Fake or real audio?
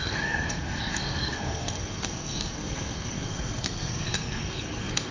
fake